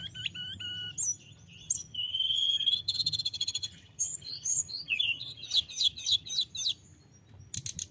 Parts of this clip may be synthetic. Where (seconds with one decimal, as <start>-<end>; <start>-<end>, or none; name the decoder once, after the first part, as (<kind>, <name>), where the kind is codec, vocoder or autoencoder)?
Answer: 1.6-6.3 (vocoder, HiFi-GAN)